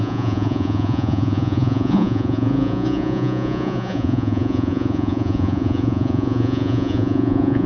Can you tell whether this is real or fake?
fake